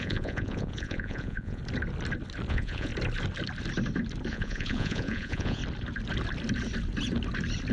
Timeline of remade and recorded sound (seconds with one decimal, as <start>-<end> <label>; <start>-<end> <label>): 0.0-1.6 remade; 1.6-2.5 recorded; 2.5-2.9 remade; 2.9-4.3 recorded; 4.3-5.6 remade; 5.6-7.7 recorded